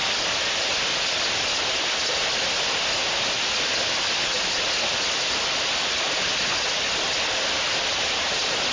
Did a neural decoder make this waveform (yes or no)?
no